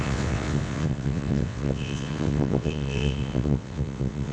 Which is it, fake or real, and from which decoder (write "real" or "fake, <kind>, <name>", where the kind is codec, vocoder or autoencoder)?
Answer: fake, vocoder, WaveNeXt